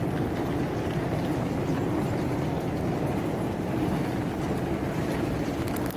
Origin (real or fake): real